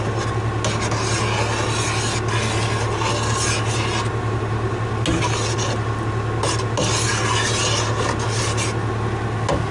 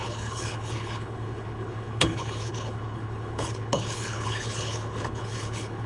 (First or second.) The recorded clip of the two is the first